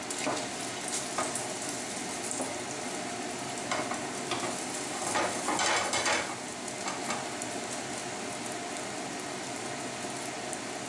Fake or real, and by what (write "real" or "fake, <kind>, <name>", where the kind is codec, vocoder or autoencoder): real